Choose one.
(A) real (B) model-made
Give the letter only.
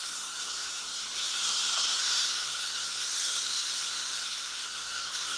B